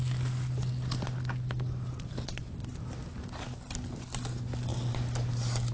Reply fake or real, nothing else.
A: real